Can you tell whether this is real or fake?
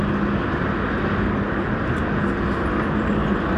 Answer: real